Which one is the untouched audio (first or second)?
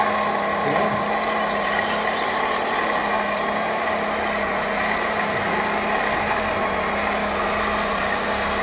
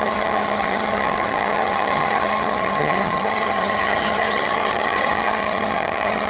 first